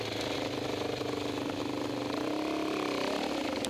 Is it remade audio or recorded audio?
recorded